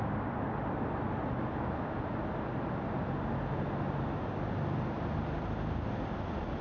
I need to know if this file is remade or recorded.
recorded